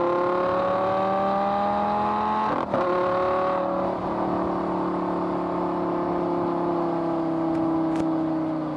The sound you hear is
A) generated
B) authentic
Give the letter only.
B